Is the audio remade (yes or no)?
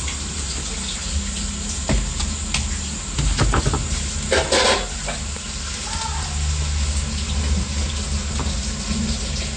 no